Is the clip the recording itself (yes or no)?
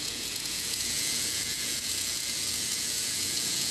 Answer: no